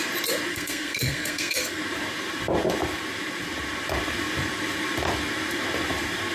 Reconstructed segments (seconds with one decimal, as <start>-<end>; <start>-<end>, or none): 0.5-1.8